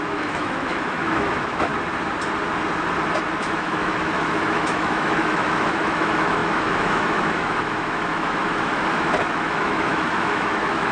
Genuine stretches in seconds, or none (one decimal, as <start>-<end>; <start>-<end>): 1.7-3.4